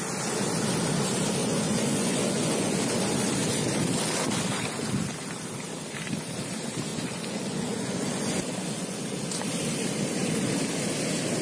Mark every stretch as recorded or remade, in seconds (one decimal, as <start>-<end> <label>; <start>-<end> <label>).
0.0-1.4 recorded; 1.4-2.8 remade; 2.8-6.9 recorded; 6.9-9.0 remade; 9.0-11.4 recorded